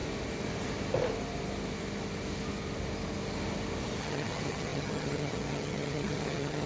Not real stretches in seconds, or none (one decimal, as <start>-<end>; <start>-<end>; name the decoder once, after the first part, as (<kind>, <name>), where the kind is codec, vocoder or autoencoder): 4.0-6.7 (vocoder, HiFi-GAN)